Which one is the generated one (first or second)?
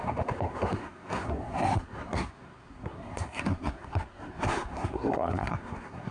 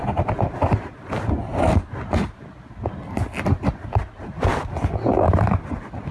first